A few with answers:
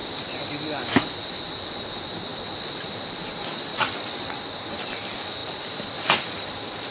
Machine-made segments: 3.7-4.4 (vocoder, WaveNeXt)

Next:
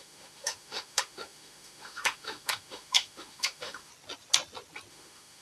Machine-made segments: 0.0-3.9 (autoencoder, DAC-VAE); 4.9-5.4

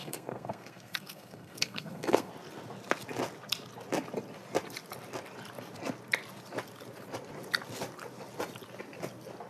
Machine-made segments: 0.0-2.3 (codec, SNAC)

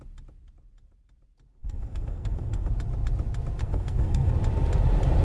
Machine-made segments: 1.6-2.7 (codec, SNAC); 3.6-4.3

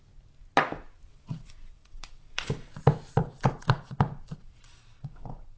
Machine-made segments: 1.1-2.5 (vocoder, Vocos); 3.2-5.6

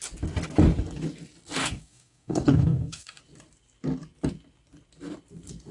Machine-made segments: 1.6-3.2 (codec, DAC)

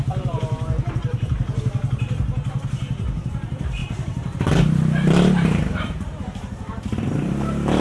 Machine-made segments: 0.0-7.8 (vocoder, BigVGAN v2)

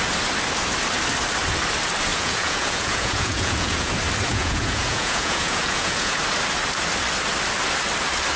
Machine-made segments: 2.1-3.9 (vocoder, Vocos); 4.3-6.2